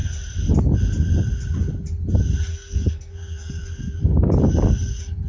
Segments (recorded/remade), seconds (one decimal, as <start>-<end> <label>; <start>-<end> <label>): 0.0-2.5 recorded; 2.5-4.0 remade; 4.0-5.3 recorded